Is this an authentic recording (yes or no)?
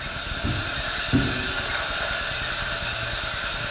yes